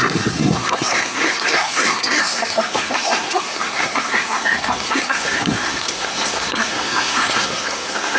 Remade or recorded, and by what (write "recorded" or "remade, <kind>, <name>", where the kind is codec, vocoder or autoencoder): remade, codec, SNAC